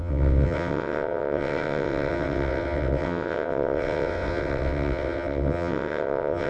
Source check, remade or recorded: remade